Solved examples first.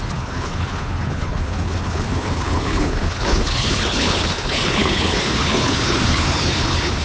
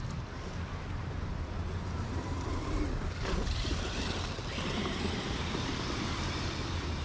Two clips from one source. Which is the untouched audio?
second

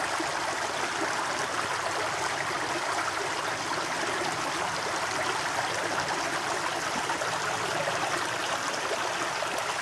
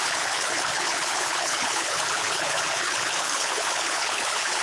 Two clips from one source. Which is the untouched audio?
first